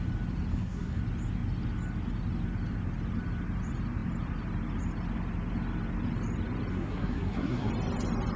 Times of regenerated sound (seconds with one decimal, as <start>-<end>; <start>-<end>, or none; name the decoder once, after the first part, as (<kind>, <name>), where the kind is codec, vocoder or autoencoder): 0.5-1.0 (codec, SNAC); 6.7-7.7